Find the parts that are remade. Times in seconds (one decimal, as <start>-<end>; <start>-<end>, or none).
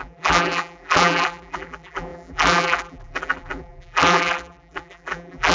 0.0-5.5